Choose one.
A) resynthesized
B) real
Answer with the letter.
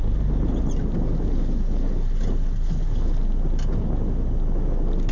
B